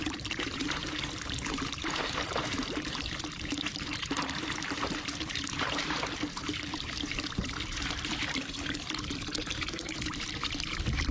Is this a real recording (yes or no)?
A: no